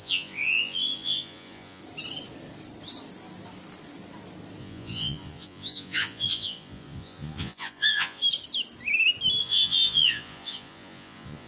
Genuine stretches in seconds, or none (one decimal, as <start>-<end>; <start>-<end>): 1.8-4.6; 8.2-9.4